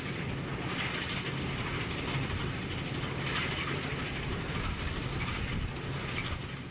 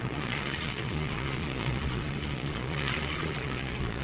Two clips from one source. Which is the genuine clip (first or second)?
first